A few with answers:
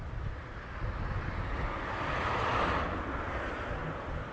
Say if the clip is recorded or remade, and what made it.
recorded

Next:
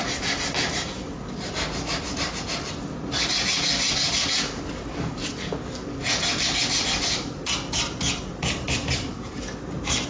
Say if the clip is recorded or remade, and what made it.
recorded